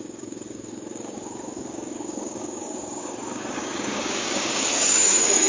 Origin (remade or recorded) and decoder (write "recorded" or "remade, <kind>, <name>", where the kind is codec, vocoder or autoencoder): remade, codec, DAC